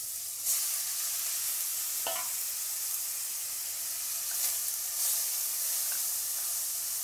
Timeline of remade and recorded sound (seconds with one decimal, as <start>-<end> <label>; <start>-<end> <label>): 0.0-7.0 recorded